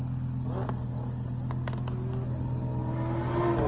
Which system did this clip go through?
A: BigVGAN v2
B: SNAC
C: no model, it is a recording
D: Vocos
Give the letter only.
C